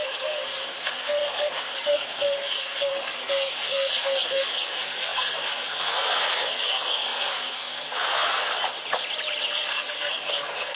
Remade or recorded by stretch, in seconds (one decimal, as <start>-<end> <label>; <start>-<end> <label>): 0.0-8.4 remade; 8.4-9.5 recorded; 9.5-10.8 remade